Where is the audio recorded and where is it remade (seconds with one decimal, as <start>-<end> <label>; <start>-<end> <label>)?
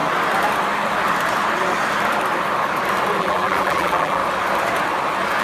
0.0-3.2 recorded; 3.2-4.2 remade; 4.2-5.4 recorded